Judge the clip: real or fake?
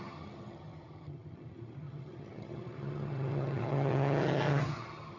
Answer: fake